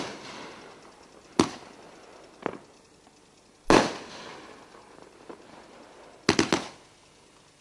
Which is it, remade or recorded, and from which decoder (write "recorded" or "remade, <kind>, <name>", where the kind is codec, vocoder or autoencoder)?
recorded